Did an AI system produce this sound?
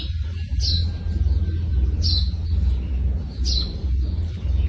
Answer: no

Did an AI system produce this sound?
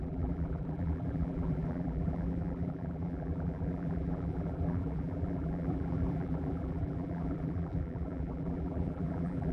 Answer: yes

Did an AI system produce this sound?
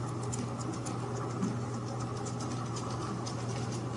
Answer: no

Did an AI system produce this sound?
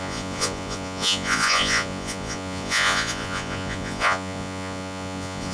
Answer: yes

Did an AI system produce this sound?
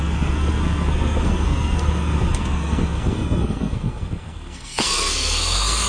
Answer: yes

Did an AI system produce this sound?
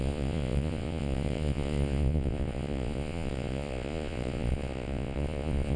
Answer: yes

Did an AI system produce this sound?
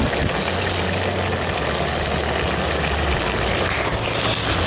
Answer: no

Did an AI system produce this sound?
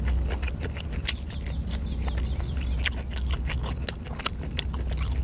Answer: no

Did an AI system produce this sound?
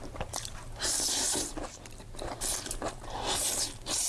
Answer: yes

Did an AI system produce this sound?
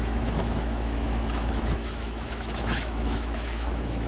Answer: yes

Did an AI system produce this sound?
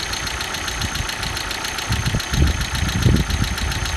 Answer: no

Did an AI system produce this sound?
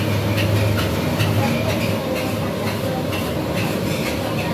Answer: no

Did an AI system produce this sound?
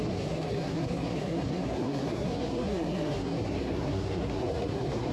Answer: yes